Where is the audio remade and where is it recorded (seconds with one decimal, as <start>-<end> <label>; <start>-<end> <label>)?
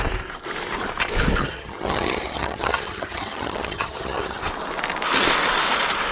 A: 0.0-1.4 recorded; 1.4-4.4 remade; 4.4-6.1 recorded